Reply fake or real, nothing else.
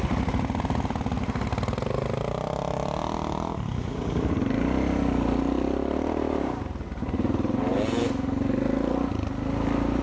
real